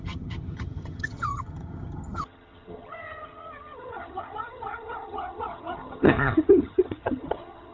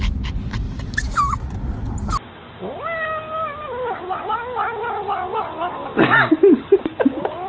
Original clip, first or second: second